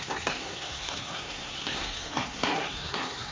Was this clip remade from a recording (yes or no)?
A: yes